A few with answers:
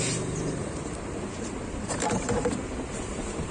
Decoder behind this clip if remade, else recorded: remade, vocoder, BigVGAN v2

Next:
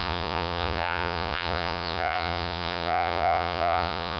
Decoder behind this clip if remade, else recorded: remade, vocoder, Vocos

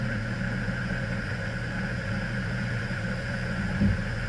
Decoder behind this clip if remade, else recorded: remade, vocoder, Vocos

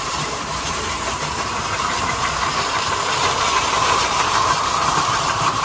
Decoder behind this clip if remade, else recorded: remade, vocoder, BigVGAN v2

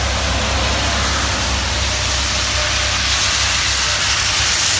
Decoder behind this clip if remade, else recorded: recorded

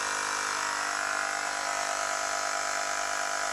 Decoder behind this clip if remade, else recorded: recorded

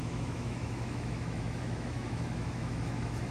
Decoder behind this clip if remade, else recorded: remade, autoencoder, DAC-VAE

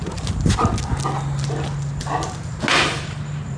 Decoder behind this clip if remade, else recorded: recorded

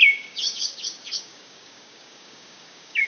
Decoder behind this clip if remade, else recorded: remade, codec, DAC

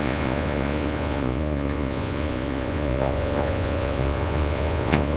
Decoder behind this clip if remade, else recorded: remade, vocoder, Vocos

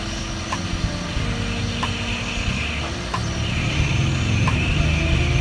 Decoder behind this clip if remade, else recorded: recorded